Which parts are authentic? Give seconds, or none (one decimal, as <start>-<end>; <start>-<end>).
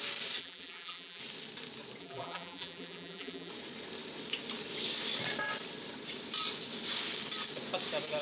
0.0-0.4; 1.2-2.0; 3.5-8.2